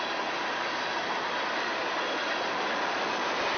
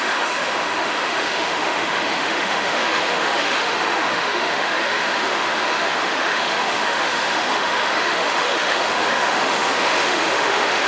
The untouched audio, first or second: first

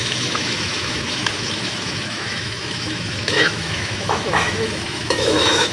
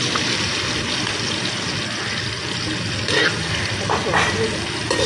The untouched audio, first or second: second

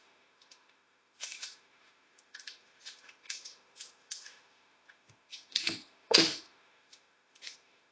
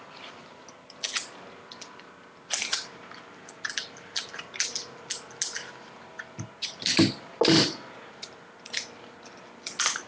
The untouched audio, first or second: second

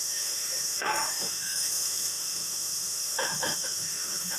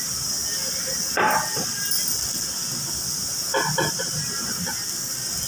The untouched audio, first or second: second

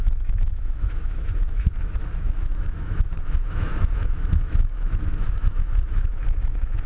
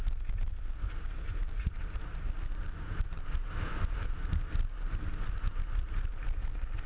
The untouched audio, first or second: second